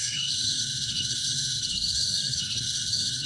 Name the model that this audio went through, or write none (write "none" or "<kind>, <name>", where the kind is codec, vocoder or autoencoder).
codec, SNAC